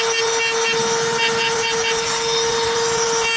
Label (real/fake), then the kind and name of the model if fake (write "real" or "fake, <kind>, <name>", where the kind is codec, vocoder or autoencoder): real